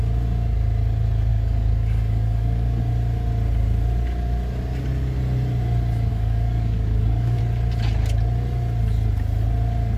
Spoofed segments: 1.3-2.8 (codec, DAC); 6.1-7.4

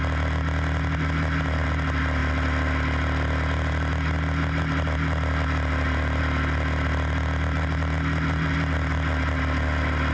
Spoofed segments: none

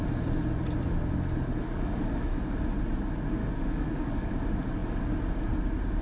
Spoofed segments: 1.6-2.3 (codec, DAC); 3.4-4.3

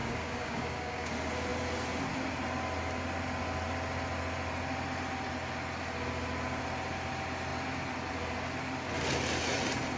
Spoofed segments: 0.0-1.1 (codec, DAC)

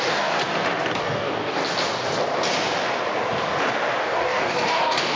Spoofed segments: 0.0-0.4 (codec, DAC); 1.0-1.6; 4.0-5.2

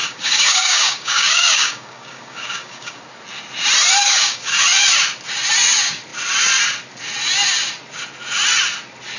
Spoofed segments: 0.0-3.0 (codec, DAC); 4.0-4.5